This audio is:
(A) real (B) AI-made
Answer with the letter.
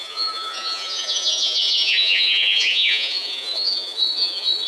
B